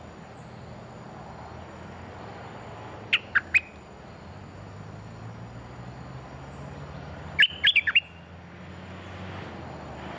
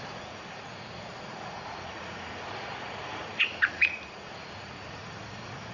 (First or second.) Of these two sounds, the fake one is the second